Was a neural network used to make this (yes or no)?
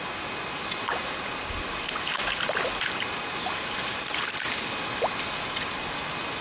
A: no